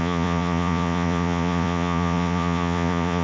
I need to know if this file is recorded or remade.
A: remade